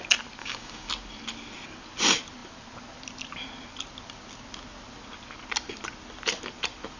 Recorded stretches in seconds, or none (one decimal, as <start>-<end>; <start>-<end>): 0.0-0.4; 0.9-7.0